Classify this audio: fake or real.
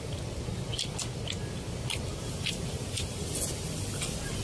real